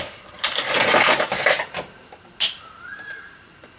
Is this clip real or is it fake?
real